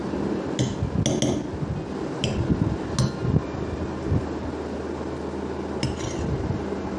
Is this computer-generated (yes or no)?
no